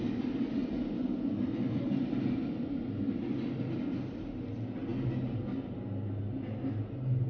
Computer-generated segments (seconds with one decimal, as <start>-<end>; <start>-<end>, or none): 0.6-3.6